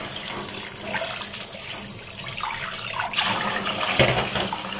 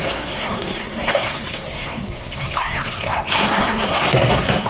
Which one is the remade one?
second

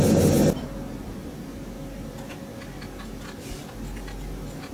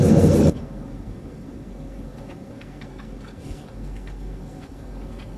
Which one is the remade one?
second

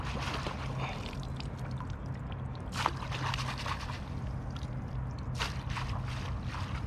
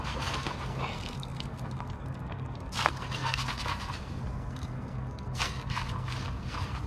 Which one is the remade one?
second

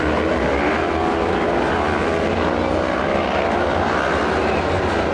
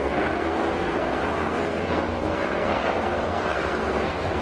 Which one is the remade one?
second